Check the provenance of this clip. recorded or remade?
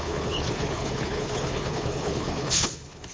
remade